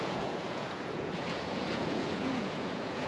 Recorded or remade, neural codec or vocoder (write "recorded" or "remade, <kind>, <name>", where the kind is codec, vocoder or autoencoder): remade, vocoder, Vocos